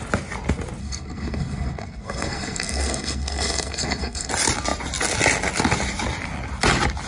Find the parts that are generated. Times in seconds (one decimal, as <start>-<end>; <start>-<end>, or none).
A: 0.8-4.3